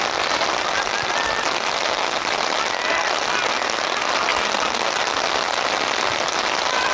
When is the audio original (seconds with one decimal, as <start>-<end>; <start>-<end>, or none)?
0.0-6.9